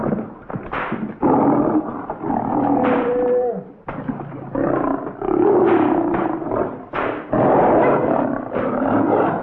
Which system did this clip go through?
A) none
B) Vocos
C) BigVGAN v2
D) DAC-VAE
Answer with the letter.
A